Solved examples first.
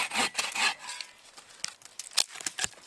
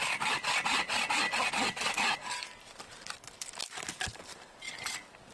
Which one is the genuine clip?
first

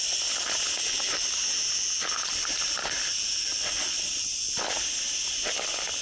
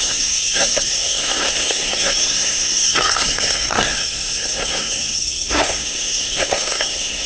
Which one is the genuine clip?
first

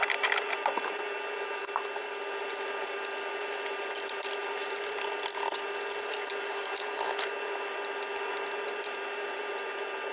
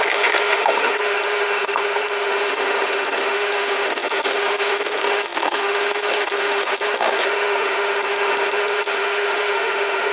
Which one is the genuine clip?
first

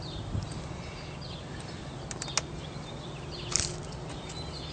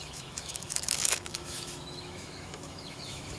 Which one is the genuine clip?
first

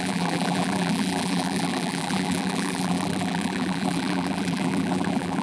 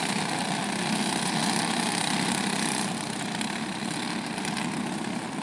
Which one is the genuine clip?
second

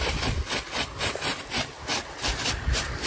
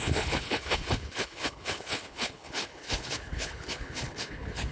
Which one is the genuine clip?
first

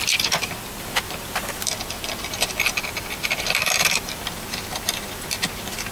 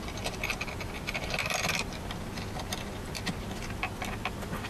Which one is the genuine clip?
second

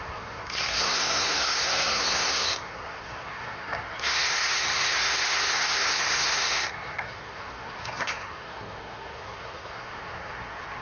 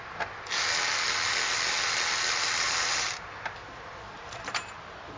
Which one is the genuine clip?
second